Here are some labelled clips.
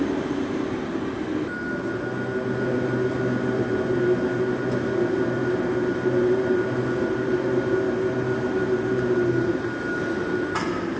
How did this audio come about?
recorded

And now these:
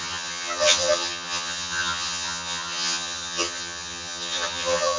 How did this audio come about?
remade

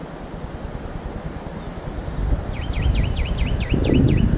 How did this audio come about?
recorded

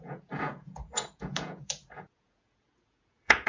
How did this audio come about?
remade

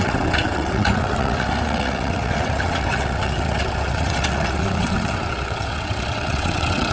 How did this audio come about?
remade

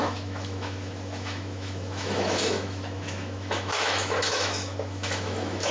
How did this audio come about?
remade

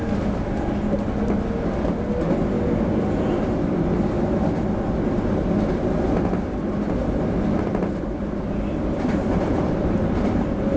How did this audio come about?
recorded